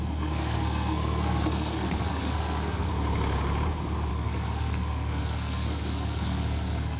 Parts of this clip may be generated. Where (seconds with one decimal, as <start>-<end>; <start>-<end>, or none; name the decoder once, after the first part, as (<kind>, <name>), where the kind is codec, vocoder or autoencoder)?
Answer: 0.0-2.9 (codec, SNAC); 4.1-7.0